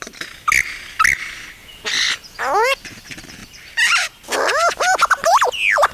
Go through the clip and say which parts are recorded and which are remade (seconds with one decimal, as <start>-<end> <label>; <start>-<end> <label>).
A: 0.0-1.6 recorded; 1.6-2.4 remade; 2.4-5.9 recorded